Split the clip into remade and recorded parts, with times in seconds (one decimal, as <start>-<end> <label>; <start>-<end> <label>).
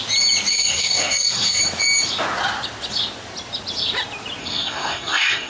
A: 0.0-0.5 recorded; 0.5-1.6 remade; 1.6-4.4 recorded; 4.4-5.5 remade